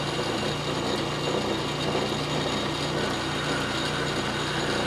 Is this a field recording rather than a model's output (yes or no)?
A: yes